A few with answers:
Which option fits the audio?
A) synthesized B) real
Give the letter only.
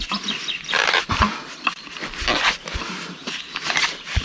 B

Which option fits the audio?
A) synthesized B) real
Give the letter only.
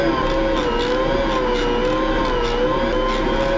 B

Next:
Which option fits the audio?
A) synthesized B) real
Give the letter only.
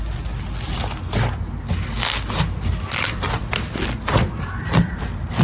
B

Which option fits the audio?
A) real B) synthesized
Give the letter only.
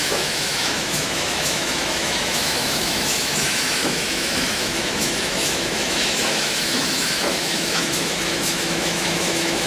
B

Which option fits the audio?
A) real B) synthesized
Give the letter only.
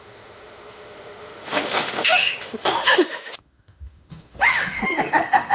B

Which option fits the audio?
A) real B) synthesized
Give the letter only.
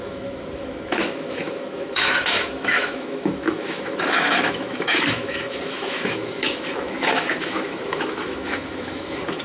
B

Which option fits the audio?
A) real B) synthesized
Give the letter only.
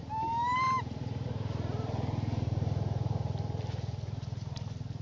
A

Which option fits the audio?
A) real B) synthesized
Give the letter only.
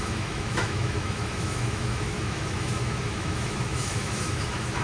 B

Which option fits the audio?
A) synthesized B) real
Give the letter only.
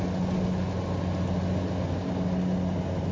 B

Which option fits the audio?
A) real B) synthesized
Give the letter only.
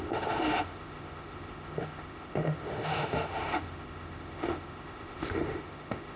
B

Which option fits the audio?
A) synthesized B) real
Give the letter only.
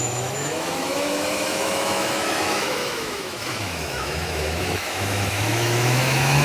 A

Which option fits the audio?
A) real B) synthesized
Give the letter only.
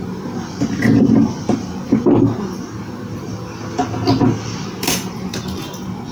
A